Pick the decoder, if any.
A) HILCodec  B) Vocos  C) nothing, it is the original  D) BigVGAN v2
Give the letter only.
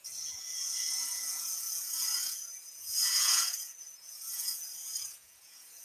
B